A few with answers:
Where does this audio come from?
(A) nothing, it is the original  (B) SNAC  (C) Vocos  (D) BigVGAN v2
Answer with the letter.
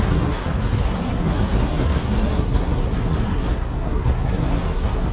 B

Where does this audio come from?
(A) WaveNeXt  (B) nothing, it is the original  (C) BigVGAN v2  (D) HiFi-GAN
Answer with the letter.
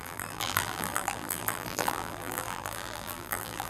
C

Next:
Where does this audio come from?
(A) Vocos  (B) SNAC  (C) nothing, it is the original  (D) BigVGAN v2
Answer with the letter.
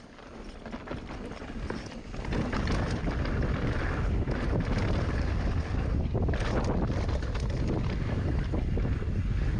C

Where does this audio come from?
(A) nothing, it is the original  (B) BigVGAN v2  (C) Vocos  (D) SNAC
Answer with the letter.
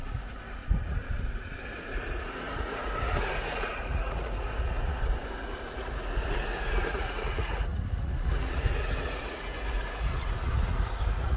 C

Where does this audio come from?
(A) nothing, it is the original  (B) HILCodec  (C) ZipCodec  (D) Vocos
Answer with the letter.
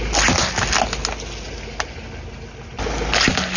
A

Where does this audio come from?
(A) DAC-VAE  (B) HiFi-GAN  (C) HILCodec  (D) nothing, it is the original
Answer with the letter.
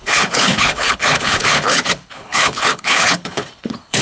C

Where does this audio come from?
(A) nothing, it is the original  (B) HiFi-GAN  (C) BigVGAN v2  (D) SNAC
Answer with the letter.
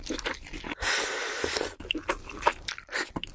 C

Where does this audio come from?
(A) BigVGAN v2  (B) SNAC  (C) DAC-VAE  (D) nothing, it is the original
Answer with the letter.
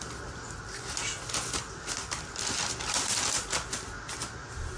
D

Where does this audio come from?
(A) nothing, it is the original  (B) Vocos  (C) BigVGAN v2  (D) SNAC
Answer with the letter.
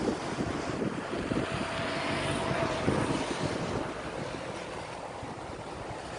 A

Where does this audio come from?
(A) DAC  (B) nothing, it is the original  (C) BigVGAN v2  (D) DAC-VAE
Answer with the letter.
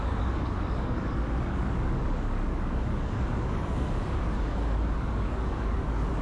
A